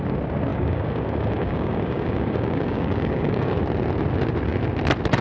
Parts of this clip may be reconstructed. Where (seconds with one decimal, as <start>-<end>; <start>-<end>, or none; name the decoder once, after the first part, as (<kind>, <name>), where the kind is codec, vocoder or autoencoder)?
0.5-3.6 (codec, DAC)